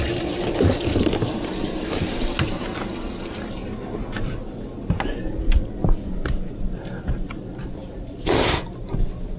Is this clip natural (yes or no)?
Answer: yes